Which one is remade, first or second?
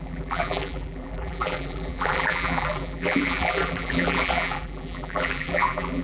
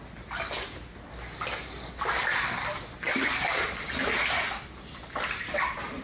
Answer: first